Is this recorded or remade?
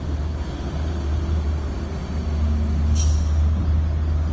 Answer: recorded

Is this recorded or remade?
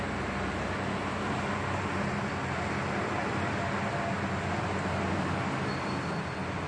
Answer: recorded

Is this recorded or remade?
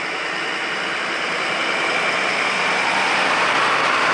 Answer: recorded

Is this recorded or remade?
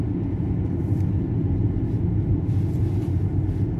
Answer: recorded